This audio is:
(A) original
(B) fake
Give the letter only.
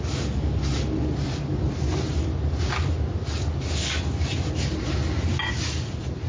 A